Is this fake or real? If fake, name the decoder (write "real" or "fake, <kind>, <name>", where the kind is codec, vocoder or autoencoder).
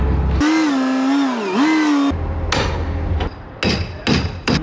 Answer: real